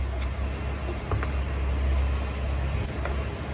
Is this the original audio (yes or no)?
yes